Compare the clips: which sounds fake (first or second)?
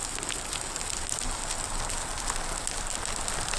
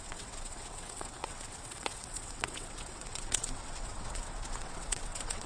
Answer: second